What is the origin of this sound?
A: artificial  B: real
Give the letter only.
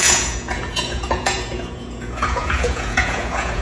A